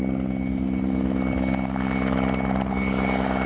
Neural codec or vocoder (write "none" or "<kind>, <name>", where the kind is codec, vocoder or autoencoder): none